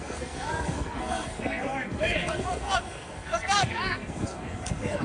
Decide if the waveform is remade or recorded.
remade